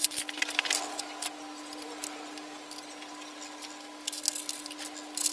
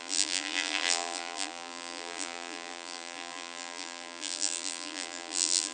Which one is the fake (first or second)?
second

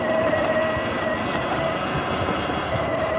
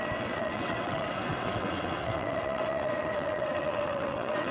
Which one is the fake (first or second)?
second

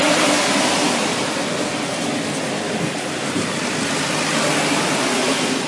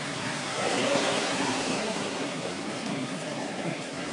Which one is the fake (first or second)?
second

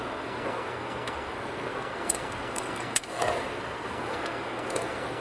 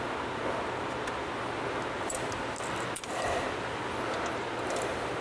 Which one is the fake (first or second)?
first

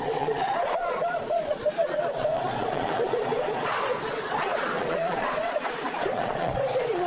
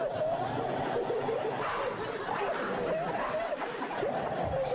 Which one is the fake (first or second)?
first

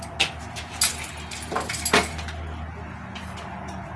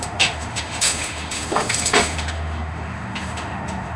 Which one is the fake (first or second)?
second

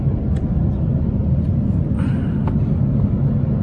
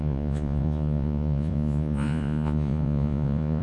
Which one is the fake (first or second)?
second